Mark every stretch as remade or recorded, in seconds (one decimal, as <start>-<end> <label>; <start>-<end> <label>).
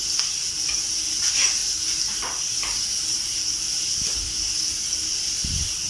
0.0-5.9 recorded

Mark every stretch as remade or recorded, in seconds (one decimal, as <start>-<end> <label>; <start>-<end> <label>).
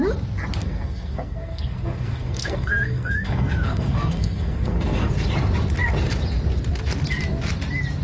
0.0-0.6 recorded; 0.6-5.1 remade; 5.1-8.0 recorded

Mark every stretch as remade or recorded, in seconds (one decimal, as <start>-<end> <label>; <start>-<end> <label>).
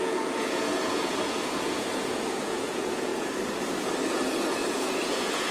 0.0-3.1 remade; 3.1-4.1 recorded; 4.1-5.5 remade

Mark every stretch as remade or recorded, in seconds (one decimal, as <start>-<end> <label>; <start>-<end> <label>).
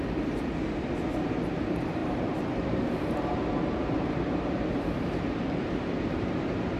0.0-3.4 remade; 3.4-4.0 recorded; 4.0-6.8 remade